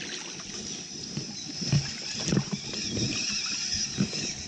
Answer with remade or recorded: recorded